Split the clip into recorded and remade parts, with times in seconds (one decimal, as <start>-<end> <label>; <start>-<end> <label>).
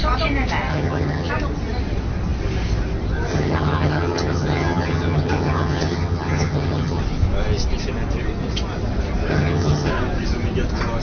0.0-0.7 recorded; 0.7-1.3 remade; 1.3-3.3 recorded; 3.3-7.0 remade; 7.0-9.3 recorded; 9.3-9.9 remade; 9.9-11.0 recorded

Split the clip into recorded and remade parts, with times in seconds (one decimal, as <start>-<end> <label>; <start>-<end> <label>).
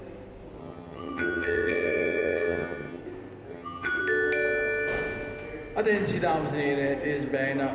0.0-0.6 recorded; 0.6-3.0 remade; 3.0-3.5 recorded; 3.5-4.0 remade; 4.0-7.7 recorded